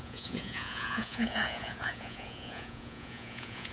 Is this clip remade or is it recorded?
remade